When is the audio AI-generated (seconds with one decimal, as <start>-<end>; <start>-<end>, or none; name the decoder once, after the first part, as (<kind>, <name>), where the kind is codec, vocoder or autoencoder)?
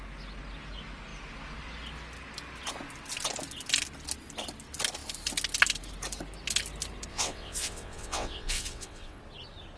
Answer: 7.1-9.2 (vocoder, WaveNeXt)